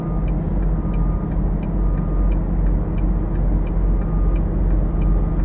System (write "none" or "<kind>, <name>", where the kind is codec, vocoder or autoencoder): none